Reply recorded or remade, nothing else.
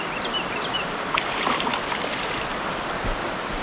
recorded